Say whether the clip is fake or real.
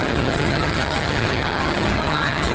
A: fake